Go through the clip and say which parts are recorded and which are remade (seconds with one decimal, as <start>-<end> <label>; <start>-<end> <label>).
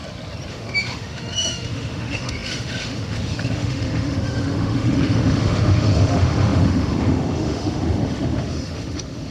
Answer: 0.0-0.5 recorded; 0.5-9.3 remade